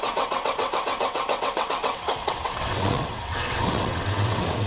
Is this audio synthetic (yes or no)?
yes